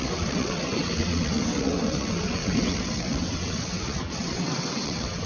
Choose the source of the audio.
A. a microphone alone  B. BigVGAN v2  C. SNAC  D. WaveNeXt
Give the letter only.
D